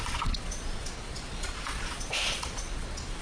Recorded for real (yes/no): no